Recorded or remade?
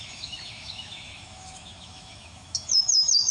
remade